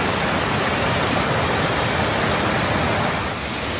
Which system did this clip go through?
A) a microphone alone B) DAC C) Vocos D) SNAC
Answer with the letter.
A